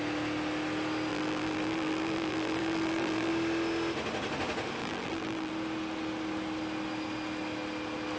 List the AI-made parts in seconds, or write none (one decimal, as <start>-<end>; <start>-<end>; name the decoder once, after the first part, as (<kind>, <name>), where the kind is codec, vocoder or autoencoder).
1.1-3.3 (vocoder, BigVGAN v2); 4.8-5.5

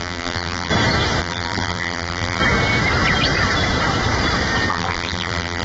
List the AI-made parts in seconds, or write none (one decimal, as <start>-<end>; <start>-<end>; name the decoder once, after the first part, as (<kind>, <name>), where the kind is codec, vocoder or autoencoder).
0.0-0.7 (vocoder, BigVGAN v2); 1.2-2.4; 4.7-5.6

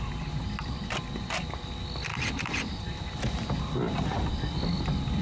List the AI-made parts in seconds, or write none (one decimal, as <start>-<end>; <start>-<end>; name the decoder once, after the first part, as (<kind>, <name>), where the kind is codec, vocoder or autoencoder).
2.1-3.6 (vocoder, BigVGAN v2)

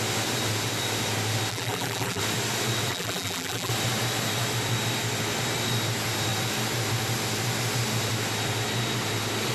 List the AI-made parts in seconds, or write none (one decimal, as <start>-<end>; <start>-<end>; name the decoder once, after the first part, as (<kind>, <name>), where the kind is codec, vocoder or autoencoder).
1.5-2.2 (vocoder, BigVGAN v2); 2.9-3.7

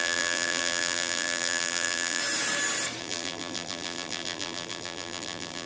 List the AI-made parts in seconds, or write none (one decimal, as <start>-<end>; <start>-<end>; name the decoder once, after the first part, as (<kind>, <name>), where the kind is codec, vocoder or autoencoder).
0.0-2.2 (vocoder, BigVGAN v2); 3.0-5.7

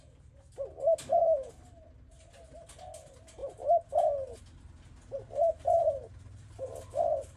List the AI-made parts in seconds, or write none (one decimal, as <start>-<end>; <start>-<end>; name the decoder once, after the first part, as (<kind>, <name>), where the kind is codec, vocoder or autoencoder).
3.4-4.4 (vocoder, BigVGAN v2); 5.4-7.4